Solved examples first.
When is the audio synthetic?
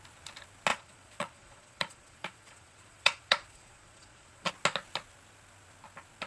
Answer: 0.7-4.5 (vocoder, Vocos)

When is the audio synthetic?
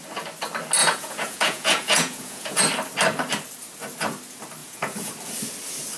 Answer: 0.8-2.6 (vocoder, Vocos); 4.6-5.1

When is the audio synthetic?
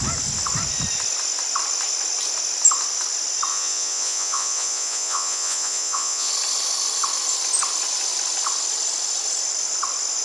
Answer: 3.5-6.3 (vocoder, Vocos)